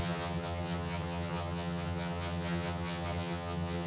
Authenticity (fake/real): fake